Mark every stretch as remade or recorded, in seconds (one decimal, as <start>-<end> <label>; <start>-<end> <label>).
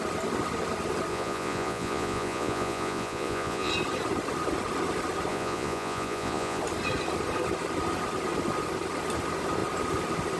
0.0-1.1 recorded; 1.1-3.7 remade; 3.7-5.3 recorded; 5.3-6.6 remade; 6.6-10.4 recorded